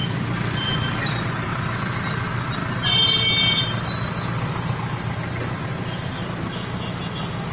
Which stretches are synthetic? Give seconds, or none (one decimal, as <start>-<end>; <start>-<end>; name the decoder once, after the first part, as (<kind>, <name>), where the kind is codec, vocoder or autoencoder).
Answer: none